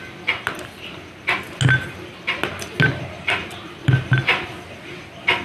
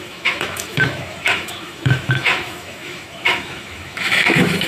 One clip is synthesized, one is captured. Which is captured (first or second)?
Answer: first